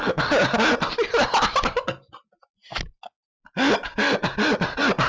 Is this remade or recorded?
recorded